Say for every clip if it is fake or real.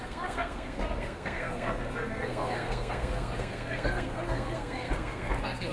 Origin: fake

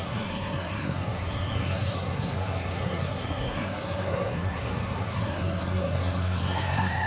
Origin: fake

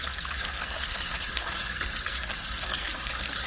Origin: fake